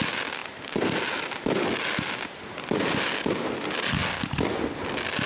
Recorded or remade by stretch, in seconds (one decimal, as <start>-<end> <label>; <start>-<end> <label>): 0.0-5.3 recorded